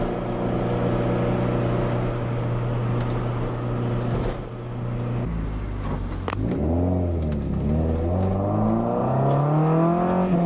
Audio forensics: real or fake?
real